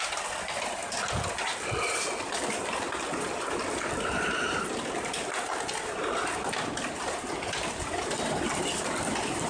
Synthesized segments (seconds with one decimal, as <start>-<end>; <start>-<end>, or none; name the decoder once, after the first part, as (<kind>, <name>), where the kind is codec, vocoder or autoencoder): none